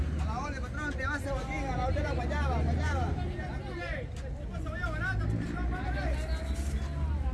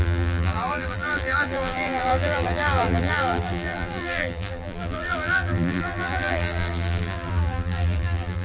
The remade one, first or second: second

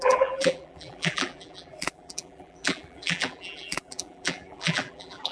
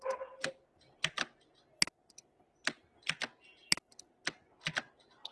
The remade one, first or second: first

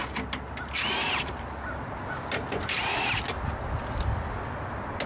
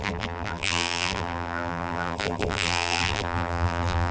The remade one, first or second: second